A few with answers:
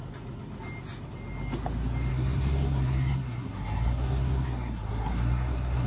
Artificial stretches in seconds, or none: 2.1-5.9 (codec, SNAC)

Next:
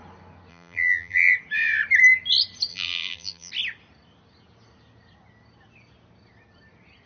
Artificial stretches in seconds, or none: 0.5-1.3 (vocoder, BigVGAN v2); 2.7-3.5

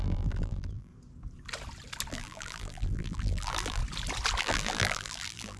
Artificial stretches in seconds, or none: 0.0-0.9 (vocoder, BigVGAN v2); 2.1-3.8; 4.4-5.6

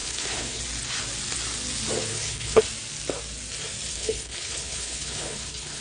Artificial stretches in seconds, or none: 0.0-0.6 (codec, HILCodec); 2.1-2.6; 3.9-5.8

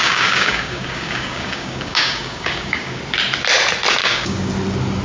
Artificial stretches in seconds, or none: 0.0-3.0 (codec, DAC); 4.0-4.5

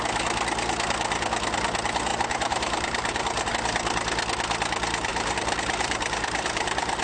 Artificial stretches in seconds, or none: 2.1-3.5 (vocoder, BigVGAN v2); 5.1-7.0